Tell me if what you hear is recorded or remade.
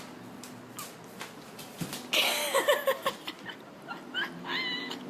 recorded